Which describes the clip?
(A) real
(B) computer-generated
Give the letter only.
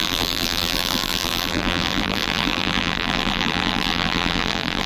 B